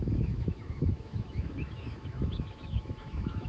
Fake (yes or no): yes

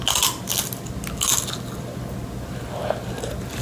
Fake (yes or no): no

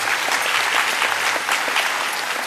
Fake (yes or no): no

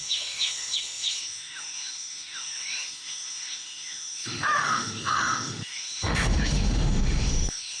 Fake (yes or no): yes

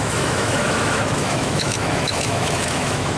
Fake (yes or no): yes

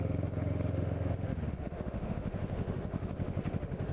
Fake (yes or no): yes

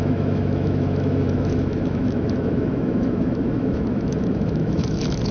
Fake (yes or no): yes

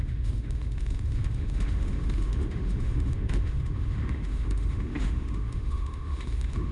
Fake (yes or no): yes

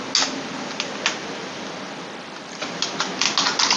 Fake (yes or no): no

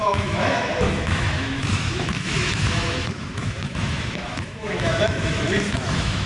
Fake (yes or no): yes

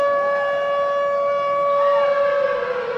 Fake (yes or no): no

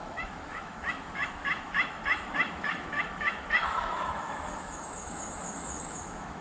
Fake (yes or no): yes